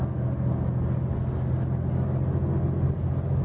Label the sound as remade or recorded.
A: recorded